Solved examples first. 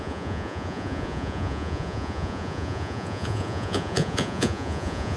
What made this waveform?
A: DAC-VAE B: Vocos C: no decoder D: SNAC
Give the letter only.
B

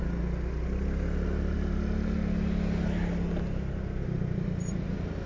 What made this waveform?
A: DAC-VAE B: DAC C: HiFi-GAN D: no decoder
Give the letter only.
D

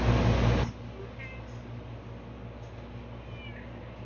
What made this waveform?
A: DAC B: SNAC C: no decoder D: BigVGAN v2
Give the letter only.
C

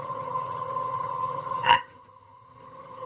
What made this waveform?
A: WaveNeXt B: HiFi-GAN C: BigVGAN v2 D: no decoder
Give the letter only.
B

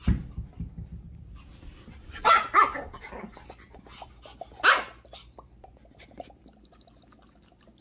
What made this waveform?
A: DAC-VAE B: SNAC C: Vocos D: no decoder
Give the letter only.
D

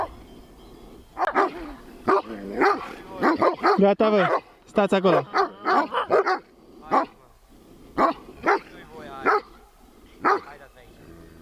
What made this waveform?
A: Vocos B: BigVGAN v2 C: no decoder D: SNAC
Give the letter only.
C